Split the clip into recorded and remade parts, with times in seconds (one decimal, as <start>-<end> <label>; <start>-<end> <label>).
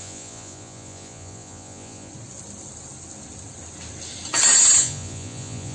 0.0-2.1 remade; 2.1-4.8 recorded; 4.8-5.7 remade